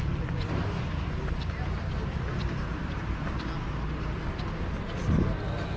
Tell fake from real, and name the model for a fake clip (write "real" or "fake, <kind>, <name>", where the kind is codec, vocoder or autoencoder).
real